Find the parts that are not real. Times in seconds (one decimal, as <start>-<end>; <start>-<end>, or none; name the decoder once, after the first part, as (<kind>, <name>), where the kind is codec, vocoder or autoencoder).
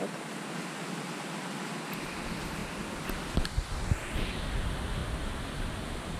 none